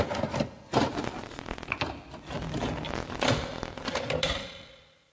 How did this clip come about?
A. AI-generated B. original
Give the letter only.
B